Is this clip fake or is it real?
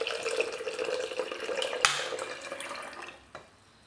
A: real